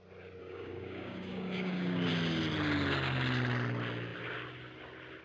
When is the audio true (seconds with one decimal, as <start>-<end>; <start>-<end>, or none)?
0.0-0.4; 2.1-5.2